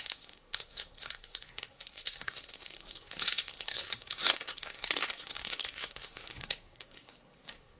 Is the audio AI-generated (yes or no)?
yes